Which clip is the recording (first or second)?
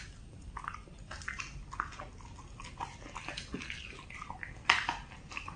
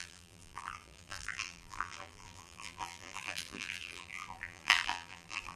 first